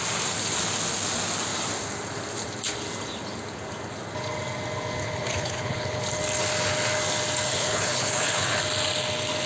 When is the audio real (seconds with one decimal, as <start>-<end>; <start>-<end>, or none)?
0.0-5.0; 6.0-7.5; 8.6-9.5